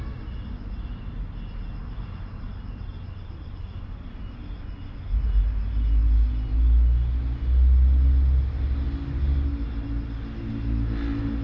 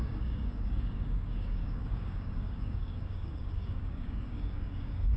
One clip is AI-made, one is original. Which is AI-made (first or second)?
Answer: second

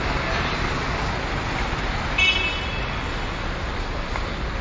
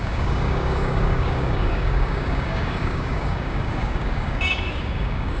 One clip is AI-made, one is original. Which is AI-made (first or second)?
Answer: second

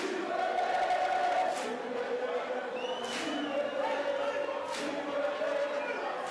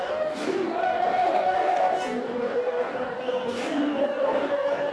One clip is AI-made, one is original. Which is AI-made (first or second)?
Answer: second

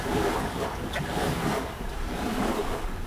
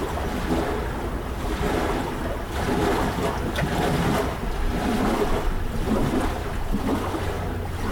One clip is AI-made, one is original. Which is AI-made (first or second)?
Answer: first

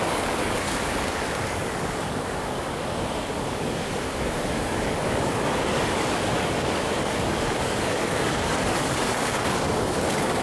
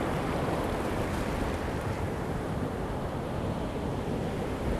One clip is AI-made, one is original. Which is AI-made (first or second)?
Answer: first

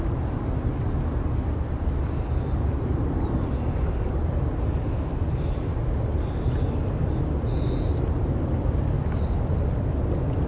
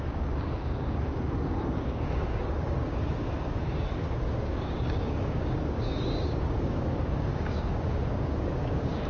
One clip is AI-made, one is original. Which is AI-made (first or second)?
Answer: second